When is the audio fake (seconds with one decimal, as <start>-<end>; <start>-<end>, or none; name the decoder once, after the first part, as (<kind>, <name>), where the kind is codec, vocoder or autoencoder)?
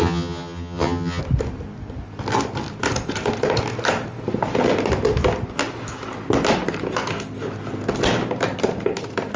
0.0-1.2 (vocoder, HiFi-GAN)